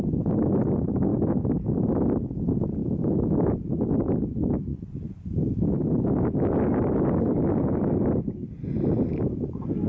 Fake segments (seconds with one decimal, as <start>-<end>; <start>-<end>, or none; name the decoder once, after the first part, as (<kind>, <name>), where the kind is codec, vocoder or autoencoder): 2.8-3.5 (autoencoder, DAC-VAE)